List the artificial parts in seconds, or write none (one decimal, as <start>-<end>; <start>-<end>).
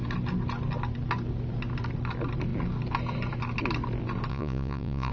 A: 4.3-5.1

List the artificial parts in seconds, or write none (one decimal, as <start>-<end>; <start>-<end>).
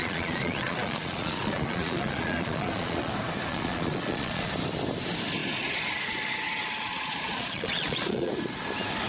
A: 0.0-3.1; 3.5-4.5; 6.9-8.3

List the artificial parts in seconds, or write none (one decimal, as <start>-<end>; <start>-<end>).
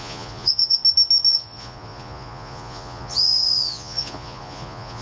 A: 0.0-0.8; 1.3-5.0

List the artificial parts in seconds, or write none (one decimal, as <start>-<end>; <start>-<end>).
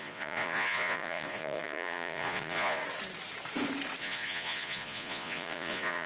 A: 0.0-2.8; 4.0-6.1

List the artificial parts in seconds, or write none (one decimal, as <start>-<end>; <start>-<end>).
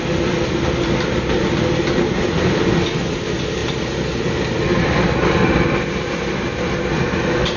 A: none